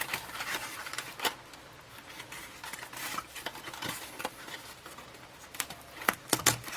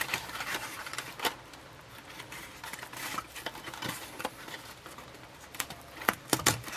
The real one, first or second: first